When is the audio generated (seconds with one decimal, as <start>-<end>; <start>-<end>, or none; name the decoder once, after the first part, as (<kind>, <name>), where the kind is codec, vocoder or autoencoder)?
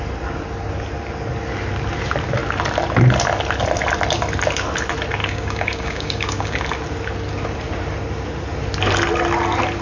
5.2-6.6 (codec, DAC)